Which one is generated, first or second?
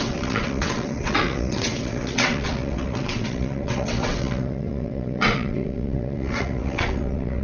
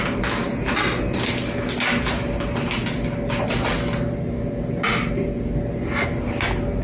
first